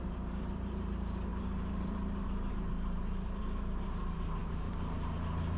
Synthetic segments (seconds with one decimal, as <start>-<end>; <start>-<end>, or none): 0.0-5.6